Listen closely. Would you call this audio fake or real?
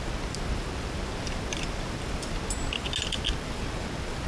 real